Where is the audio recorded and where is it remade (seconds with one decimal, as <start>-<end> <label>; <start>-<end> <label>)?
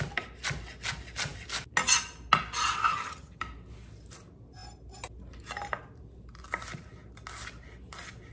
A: 0.0-2.9 recorded; 2.9-3.4 remade; 3.4-8.3 recorded